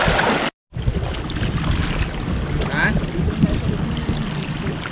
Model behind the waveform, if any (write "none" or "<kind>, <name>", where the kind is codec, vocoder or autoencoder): none